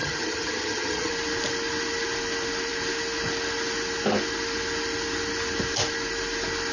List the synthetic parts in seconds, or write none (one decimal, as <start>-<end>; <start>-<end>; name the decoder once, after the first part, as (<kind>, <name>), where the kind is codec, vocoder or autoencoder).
0.0-1.1 (vocoder, HiFi-GAN)